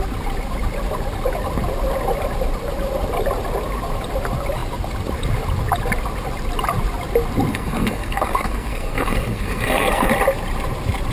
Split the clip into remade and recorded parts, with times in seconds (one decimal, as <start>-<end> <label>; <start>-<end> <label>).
0.0-7.5 recorded; 7.5-10.1 remade; 10.1-11.1 recorded